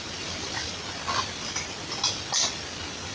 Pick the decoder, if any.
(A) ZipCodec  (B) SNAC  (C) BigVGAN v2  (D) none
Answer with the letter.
D